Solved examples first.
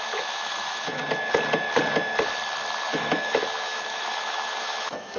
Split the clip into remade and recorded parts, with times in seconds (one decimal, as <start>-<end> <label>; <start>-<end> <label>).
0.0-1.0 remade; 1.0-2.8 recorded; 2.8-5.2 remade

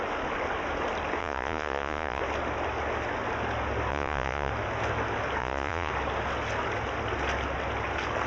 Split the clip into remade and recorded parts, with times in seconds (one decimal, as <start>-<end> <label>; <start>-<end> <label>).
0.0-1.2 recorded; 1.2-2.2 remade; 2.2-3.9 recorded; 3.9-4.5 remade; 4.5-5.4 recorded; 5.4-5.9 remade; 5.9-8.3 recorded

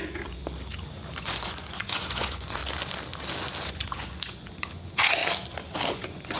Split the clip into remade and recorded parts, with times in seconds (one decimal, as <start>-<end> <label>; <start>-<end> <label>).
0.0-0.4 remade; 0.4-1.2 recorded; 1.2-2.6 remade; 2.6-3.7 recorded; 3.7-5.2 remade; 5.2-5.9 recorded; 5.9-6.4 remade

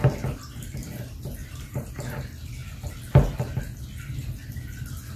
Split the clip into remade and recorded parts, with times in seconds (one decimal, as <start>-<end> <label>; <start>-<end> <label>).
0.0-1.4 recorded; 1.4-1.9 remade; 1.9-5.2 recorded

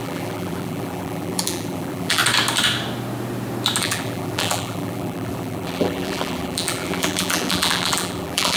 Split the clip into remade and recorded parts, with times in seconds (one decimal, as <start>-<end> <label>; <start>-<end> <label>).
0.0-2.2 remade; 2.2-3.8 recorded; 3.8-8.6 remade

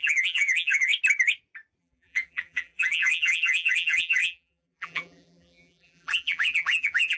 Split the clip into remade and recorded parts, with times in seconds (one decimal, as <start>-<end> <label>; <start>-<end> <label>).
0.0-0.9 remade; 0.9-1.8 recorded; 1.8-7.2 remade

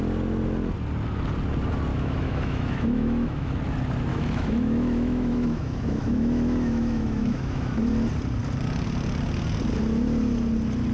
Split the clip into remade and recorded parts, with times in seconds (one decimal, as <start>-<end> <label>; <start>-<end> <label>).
0.0-1.9 recorded; 1.9-3.5 remade; 3.5-4.1 recorded; 4.1-7.8 remade; 7.8-10.9 recorded